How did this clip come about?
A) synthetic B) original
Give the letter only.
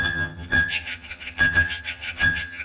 A